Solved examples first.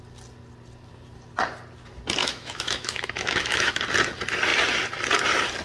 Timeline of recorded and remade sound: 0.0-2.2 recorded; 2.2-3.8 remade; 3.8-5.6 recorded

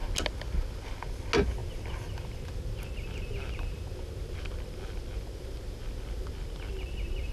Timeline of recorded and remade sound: 0.0-7.3 recorded

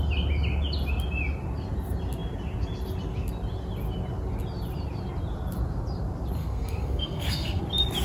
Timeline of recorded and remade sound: 0.0-6.4 recorded; 6.4-7.6 remade; 7.6-8.0 recorded

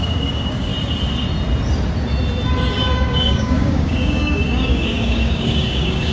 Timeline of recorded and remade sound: 0.0-0.7 remade; 0.7-2.7 recorded; 2.7-6.1 remade

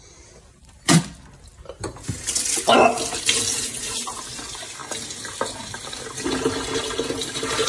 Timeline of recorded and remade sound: 0.0-7.7 recorded

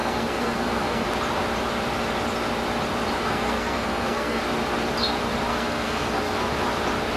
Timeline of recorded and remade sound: 0.0-1.1 remade; 1.1-3.2 recorded; 3.2-4.4 remade; 4.4-5.5 recorded; 5.5-6.5 remade; 6.5-7.2 recorded

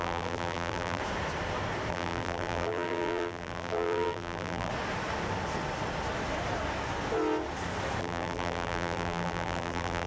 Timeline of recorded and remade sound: 0.0-1.0 remade; 1.0-1.9 recorded; 1.9-4.7 remade; 4.7-8.0 recorded; 8.0-10.1 remade